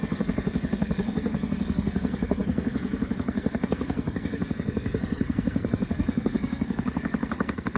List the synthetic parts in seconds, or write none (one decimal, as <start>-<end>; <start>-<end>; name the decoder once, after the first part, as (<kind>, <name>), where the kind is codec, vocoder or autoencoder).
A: 0.0-7.8 (codec, SNAC)